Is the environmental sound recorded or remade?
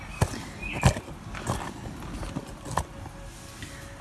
recorded